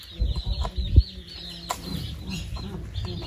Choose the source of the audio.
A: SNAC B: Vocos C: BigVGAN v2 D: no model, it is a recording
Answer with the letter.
D